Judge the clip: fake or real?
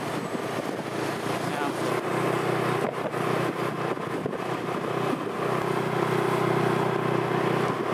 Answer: real